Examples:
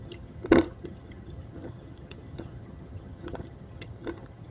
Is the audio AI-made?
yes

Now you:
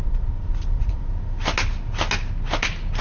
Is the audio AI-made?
no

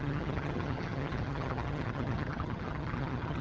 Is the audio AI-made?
yes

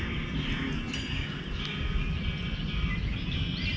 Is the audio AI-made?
no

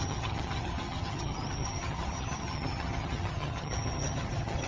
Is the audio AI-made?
yes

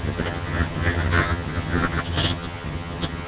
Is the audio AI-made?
yes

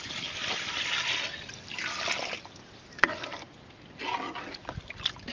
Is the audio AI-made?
no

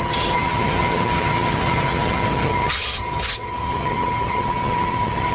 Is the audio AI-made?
yes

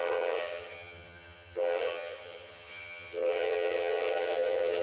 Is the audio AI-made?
yes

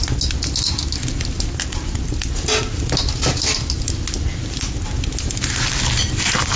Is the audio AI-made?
no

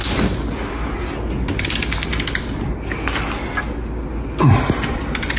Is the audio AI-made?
no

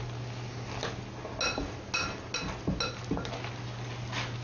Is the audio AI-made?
no